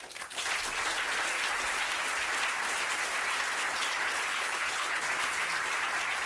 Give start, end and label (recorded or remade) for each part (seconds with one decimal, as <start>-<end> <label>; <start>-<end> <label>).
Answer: 0.0-4.3 recorded; 4.3-5.0 remade; 5.0-6.3 recorded